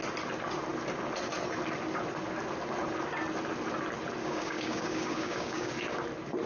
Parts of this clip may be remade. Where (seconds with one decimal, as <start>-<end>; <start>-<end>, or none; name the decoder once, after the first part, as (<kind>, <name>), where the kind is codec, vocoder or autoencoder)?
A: 4.2-5.7 (codec, DAC)